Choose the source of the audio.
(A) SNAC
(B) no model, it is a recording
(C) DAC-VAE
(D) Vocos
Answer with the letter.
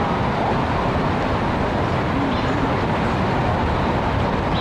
B